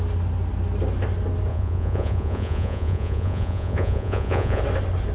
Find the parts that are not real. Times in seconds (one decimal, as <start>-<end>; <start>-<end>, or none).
1.5-4.6